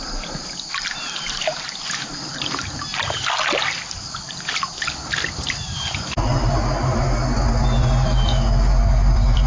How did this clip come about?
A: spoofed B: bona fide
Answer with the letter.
B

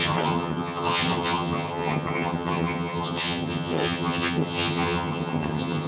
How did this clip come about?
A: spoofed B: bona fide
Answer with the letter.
A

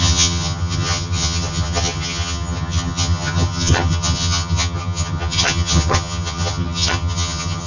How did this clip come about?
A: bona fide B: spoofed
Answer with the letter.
B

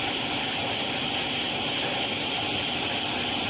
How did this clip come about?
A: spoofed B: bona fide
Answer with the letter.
B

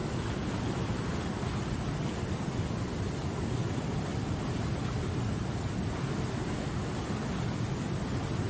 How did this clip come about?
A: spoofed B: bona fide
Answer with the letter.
B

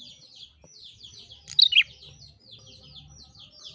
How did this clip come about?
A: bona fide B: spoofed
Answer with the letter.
A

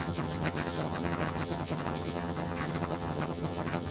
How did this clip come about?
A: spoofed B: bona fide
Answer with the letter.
A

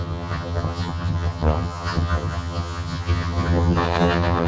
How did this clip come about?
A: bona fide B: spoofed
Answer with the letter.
B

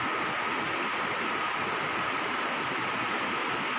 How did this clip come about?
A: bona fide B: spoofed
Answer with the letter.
A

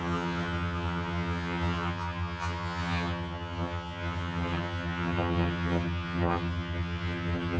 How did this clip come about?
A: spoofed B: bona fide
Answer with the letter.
A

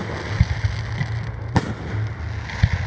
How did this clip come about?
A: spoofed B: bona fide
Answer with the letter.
B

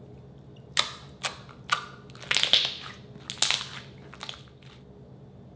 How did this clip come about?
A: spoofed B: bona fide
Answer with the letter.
B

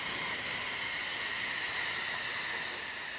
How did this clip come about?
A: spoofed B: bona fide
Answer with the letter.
B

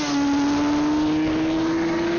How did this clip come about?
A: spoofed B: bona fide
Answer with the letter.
B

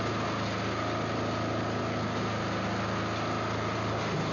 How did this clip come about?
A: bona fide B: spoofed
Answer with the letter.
A